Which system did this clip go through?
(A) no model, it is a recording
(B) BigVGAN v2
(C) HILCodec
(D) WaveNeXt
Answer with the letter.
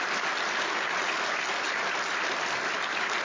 A